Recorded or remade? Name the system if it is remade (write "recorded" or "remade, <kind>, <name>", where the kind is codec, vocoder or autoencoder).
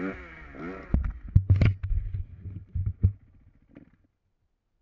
recorded